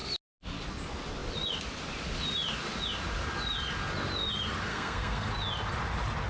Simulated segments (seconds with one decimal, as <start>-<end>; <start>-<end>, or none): 4.7-5.3